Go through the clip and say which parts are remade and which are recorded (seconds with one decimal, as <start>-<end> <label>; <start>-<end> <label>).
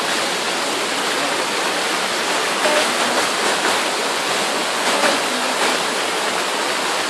0.0-4.0 recorded; 4.0-5.6 remade; 5.6-7.1 recorded